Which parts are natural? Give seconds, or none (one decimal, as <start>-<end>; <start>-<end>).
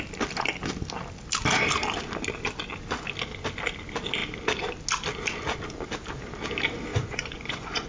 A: 0.0-6.9